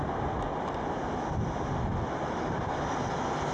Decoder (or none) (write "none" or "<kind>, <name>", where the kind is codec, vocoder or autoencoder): none